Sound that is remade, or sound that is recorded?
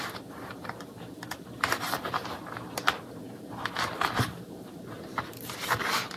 remade